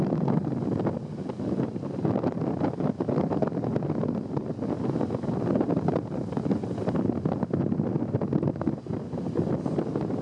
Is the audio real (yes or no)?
yes